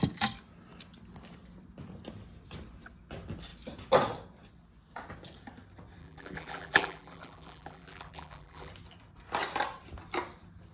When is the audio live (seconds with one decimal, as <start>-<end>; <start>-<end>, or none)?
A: 0.0-6.0; 8.7-10.7

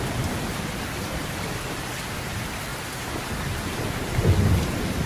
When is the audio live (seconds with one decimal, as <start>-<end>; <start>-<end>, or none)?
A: none